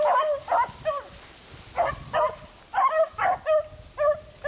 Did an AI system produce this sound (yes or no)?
no